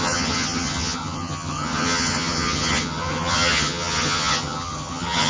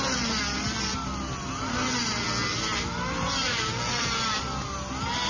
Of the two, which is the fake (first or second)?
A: first